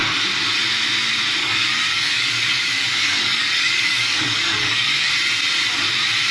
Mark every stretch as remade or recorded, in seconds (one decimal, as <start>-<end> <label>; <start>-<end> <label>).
0.0-1.4 recorded; 1.4-5.1 remade; 5.1-6.3 recorded